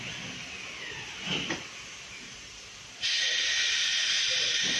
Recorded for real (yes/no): yes